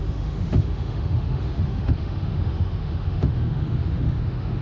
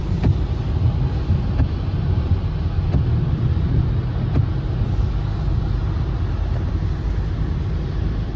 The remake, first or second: first